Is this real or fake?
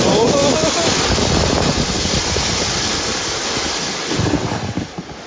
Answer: real